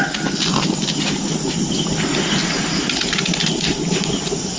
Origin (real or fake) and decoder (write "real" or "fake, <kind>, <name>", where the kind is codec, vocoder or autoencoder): real